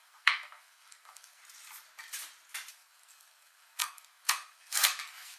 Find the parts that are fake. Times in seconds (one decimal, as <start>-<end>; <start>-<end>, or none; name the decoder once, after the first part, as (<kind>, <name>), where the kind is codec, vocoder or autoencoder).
0.0-1.4 (codec, SNAC); 2.7-5.4